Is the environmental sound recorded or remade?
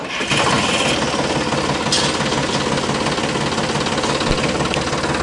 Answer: recorded